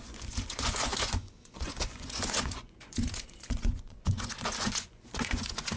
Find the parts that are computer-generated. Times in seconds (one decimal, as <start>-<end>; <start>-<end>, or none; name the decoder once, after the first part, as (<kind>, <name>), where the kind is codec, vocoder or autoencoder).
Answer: 0.0-5.8 (vocoder, Vocos)